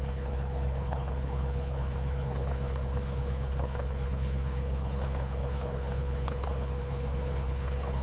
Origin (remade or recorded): remade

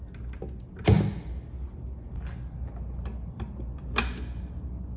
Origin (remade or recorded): recorded